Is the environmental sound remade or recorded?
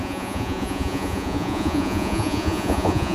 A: remade